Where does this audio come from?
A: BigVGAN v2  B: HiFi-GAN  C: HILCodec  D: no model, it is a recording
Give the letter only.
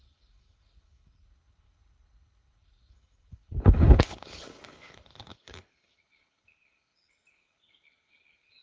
C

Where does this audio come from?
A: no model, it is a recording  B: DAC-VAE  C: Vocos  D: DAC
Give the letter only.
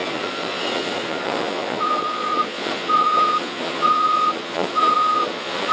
C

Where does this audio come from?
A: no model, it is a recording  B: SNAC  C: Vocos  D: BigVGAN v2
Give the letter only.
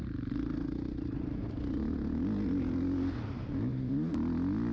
A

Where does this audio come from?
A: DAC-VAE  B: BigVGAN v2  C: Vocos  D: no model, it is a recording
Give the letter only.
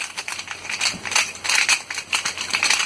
D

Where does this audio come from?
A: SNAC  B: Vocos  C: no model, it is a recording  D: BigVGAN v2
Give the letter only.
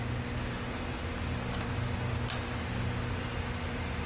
C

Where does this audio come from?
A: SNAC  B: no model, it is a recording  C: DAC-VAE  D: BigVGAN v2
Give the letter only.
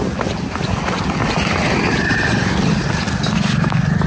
B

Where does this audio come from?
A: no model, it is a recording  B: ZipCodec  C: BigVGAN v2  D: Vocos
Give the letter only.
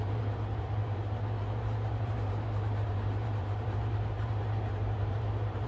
C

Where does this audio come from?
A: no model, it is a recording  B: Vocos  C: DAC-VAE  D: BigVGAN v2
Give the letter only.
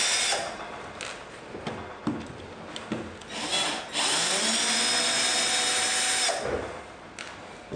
A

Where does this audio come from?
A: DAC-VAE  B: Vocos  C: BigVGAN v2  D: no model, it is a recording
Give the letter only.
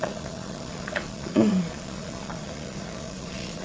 B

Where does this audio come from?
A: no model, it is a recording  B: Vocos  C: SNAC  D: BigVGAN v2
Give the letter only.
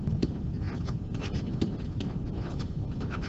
A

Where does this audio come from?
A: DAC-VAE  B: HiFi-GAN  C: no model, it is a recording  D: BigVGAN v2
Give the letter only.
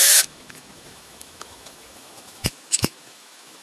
A